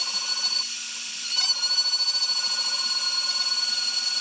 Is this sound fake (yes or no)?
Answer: no